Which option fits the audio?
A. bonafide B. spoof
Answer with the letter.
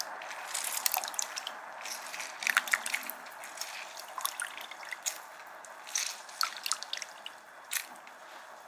A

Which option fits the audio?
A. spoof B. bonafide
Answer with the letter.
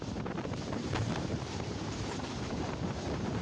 A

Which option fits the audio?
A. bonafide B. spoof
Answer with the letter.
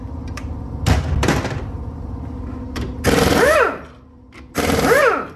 A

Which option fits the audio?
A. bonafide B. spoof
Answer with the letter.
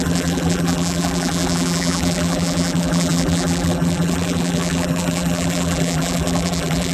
B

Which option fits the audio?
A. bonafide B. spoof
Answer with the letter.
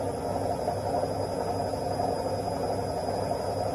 A